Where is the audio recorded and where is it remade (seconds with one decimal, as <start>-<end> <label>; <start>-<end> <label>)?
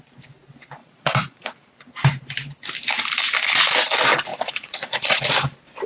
0.0-0.8 recorded; 0.8-1.7 remade; 1.7-4.3 recorded; 4.3-5.2 remade; 5.2-5.9 recorded